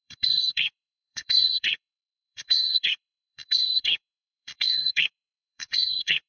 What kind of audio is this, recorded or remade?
remade